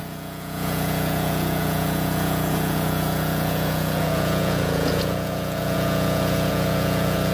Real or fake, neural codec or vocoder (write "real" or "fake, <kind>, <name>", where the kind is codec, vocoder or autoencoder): fake, vocoder, Vocos